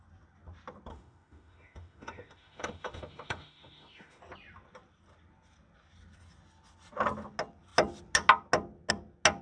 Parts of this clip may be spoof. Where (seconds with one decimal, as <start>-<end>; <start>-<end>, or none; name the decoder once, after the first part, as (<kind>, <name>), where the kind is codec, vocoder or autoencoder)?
0.9-4.2 (autoencoder, DAC-VAE)